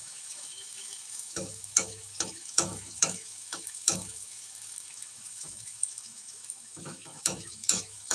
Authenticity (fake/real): fake